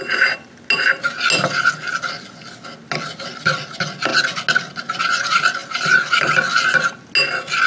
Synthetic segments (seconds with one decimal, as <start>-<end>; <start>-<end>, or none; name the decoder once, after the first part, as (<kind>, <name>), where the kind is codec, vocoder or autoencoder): none